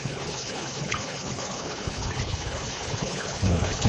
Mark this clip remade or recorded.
remade